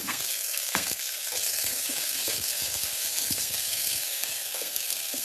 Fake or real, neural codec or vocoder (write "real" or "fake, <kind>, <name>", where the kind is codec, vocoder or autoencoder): fake, codec, SNAC